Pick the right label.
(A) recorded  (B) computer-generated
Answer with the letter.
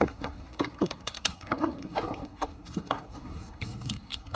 B